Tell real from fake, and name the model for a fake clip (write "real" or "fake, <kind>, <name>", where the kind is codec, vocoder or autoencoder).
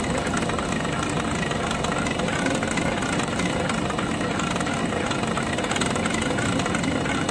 real